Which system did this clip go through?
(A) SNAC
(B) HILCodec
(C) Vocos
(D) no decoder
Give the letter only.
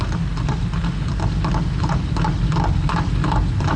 D